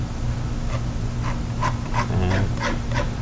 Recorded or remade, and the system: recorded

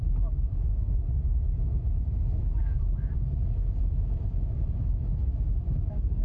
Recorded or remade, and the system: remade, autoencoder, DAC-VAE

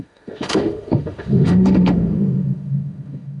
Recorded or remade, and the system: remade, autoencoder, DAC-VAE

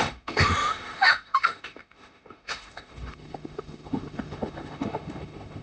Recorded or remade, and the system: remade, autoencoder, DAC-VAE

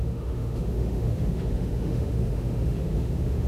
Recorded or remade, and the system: remade, autoencoder, DAC-VAE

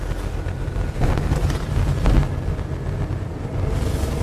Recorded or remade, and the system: recorded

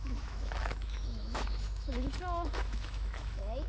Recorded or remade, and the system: remade, autoencoder, DAC-VAE